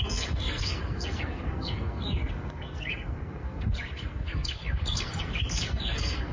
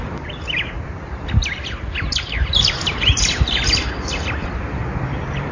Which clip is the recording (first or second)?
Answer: second